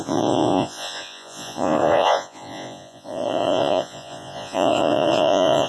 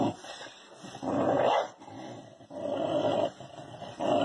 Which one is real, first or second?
second